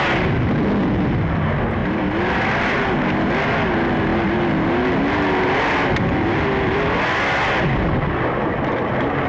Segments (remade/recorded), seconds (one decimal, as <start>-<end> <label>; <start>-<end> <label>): 0.0-9.3 recorded